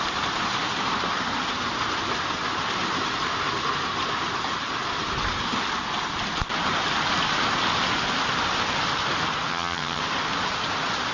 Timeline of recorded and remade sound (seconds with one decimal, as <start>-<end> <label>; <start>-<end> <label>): 0.0-9.5 recorded; 9.5-10.0 remade; 10.0-11.1 recorded